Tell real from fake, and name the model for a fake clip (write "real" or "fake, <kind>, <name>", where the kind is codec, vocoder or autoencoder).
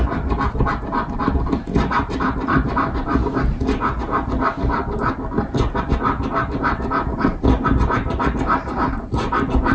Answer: real